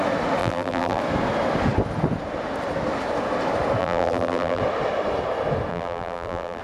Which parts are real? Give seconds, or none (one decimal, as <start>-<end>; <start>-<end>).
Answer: 0.0-0.4; 1.0-3.8; 4.6-5.7